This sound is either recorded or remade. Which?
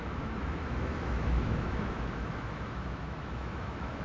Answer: remade